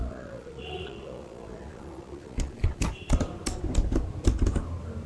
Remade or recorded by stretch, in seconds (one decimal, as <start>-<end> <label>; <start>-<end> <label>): 0.0-2.8 remade; 2.8-5.1 recorded